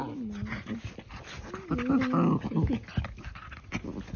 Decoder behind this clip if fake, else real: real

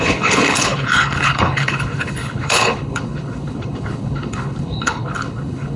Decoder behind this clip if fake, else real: fake, codec, HILCodec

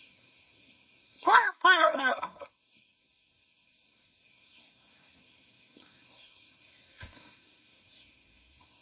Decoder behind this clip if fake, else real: fake, codec, SNAC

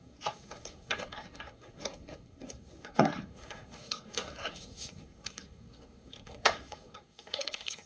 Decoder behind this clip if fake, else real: fake, codec, SNAC